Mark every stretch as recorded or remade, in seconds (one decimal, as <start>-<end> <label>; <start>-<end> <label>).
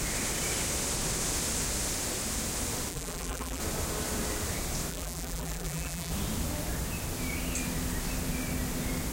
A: 0.0-2.9 recorded; 2.9-3.6 remade; 3.6-4.9 recorded; 4.9-6.1 remade; 6.1-9.1 recorded